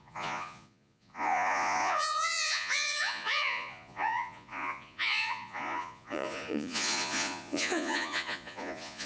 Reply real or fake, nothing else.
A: fake